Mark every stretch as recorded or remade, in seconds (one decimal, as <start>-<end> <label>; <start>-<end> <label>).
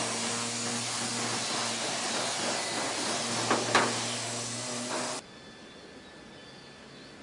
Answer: 0.0-7.2 recorded